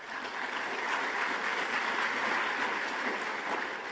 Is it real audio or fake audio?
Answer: real